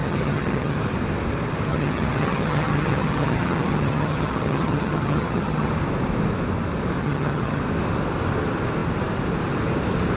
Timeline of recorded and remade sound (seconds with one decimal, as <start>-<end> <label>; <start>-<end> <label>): 0.0-0.8 remade; 0.8-1.7 recorded; 1.7-5.7 remade; 5.7-7.0 recorded; 7.0-7.6 remade; 7.6-10.2 recorded